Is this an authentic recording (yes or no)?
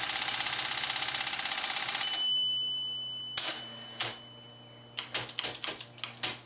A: yes